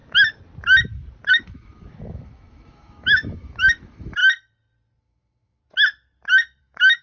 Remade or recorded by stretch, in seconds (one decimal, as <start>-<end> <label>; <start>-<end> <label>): 0.0-1.3 recorded; 1.3-4.2 remade; 4.2-5.0 recorded; 5.0-5.6 remade; 5.6-6.6 recorded; 6.6-7.0 remade